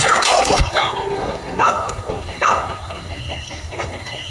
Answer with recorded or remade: remade